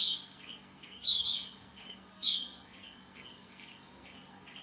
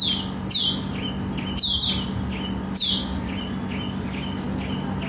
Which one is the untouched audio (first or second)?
second